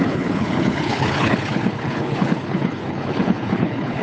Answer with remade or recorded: remade